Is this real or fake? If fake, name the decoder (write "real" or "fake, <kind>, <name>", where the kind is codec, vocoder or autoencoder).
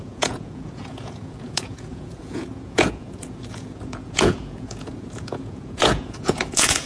fake, vocoder, Vocos